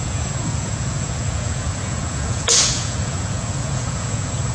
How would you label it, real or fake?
fake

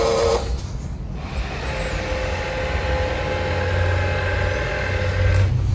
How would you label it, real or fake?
real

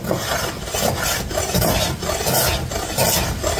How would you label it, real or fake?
real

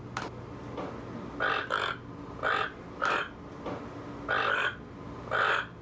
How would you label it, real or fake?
real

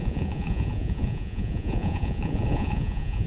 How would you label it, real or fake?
fake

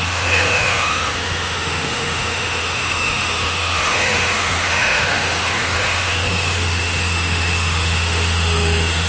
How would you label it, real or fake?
fake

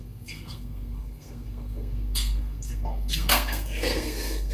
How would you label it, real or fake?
fake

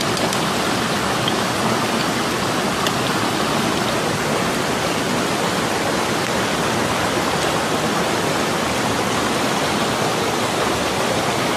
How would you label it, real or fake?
real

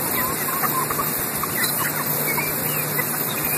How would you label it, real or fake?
real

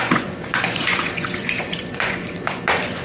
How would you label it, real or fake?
fake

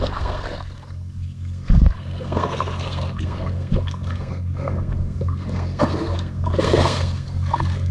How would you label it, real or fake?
fake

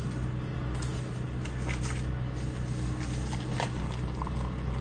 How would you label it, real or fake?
real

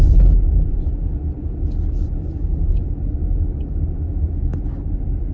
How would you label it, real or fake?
real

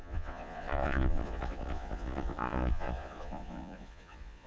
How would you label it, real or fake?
fake